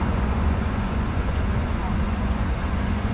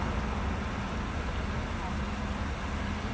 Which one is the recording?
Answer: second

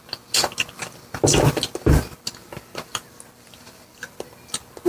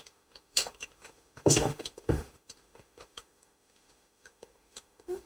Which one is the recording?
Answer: first